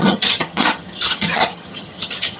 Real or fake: fake